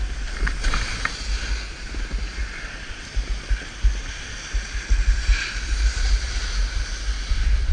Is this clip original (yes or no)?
yes